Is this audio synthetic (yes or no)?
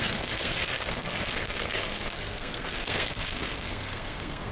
yes